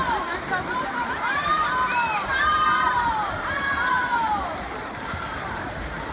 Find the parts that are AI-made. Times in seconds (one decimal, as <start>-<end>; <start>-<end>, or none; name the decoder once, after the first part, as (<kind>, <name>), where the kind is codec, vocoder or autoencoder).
0.0-6.1 (vocoder, BigVGAN v2)